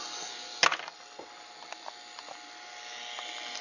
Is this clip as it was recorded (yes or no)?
yes